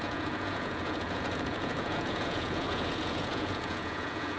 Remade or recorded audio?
remade